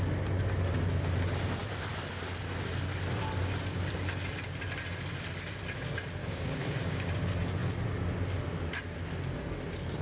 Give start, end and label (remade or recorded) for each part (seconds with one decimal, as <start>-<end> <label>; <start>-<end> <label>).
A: 0.0-6.2 recorded; 6.2-7.1 remade; 7.1-10.0 recorded